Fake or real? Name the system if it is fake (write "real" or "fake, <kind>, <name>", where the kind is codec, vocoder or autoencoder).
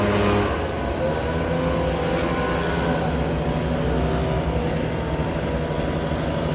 real